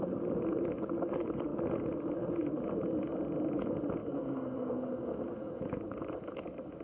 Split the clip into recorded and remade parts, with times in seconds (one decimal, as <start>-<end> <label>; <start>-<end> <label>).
0.0-4.0 recorded; 4.0-6.8 remade